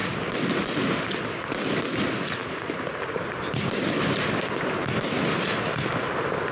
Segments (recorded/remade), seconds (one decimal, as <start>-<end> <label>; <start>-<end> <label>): 0.0-2.4 recorded; 2.4-5.2 remade; 5.2-6.5 recorded